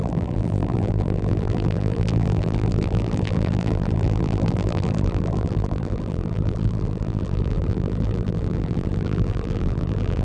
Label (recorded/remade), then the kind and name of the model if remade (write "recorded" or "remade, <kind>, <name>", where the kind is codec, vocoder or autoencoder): remade, vocoder, BigVGAN v2